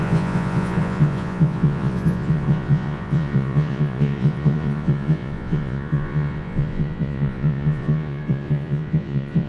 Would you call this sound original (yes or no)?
no